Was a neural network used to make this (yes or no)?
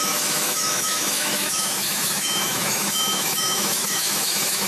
yes